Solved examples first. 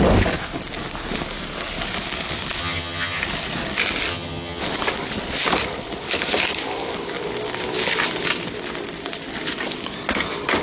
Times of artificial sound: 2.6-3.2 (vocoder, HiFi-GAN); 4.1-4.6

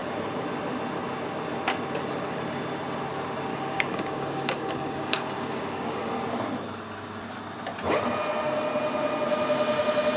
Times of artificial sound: 3.5-6.1 (codec, DAC)

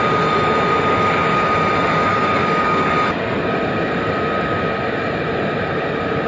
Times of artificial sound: 2.1-2.9 (codec, DAC)

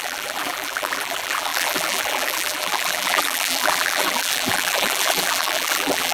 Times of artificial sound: 0.0-6.1 (vocoder, BigVGAN v2)

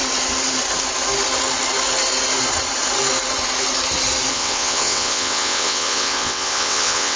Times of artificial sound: 4.3-7.2 (vocoder, WaveNeXt)

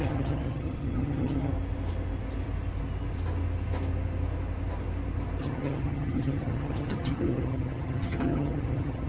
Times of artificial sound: 0.0-1.5 (vocoder, HiFi-GAN); 5.4-9.1

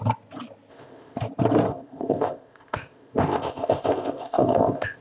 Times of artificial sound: 0.7-1.2 (codec, ZipCodec); 1.7-5.0